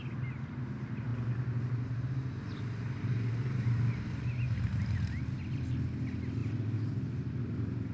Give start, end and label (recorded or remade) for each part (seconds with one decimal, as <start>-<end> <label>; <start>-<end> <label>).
0.0-7.9 recorded